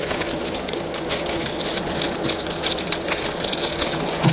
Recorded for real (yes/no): no